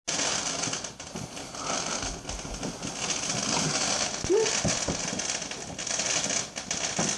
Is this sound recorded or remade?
recorded